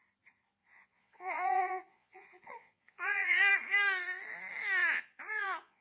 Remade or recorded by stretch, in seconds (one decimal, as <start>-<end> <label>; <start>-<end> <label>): 0.0-0.6 recorded; 0.6-3.5 remade; 3.5-4.8 recorded; 4.8-5.8 remade